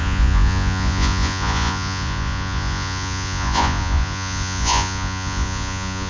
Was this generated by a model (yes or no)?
yes